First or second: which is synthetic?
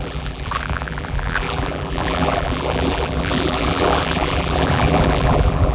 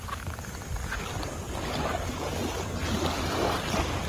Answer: first